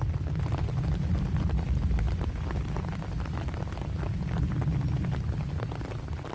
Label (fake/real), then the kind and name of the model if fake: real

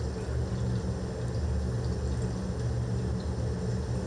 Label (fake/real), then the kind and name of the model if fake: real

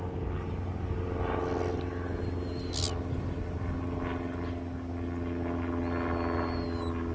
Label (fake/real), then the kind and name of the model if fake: real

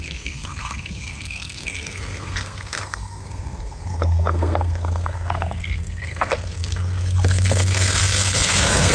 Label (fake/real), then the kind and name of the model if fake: fake, codec, SNAC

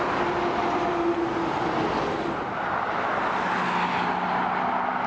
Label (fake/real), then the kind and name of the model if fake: real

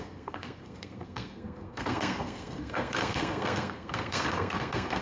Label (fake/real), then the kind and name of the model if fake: fake, codec, SNAC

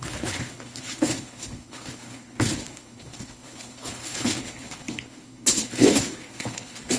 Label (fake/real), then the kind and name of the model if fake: fake, codec, HILCodec